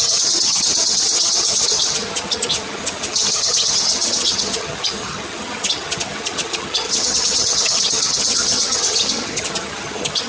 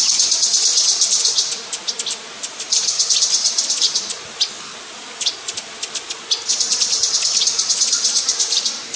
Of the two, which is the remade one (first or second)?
first